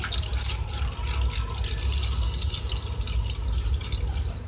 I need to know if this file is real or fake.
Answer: real